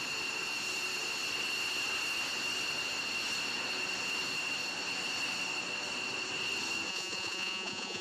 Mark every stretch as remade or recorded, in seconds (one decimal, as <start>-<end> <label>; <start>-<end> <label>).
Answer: 0.0-6.9 recorded; 6.9-8.0 remade